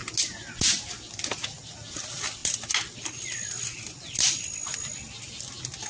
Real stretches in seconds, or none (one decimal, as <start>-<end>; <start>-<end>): 0.0-5.9